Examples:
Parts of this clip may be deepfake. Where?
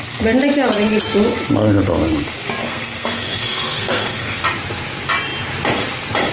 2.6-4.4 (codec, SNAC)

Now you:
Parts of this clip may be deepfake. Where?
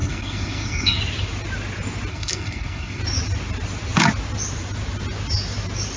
0.0-1.0 (codec, SNAC); 2.1-3.0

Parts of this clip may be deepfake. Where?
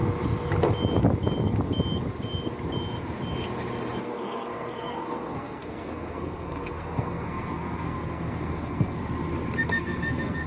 4.0-9.0 (codec, SNAC); 9.6-10.5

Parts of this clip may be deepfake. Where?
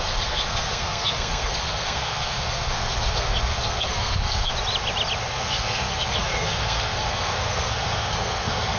0.0-4.5 (codec, SNAC); 5.3-8.8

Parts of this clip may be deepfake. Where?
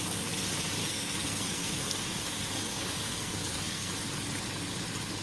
0.8-3.9 (codec, SNAC)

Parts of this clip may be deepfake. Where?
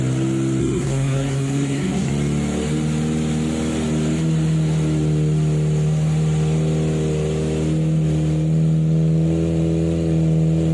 0.6-2.1 (codec, SNAC)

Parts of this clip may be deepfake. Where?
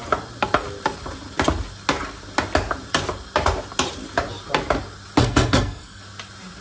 5.2-6.0 (codec, SNAC)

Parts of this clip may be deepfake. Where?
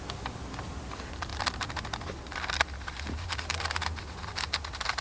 none